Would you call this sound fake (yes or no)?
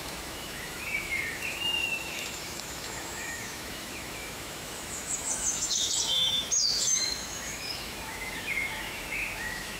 yes